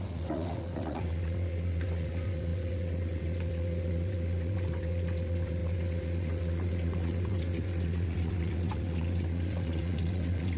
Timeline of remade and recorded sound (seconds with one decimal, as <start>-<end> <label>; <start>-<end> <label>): 0.0-10.6 remade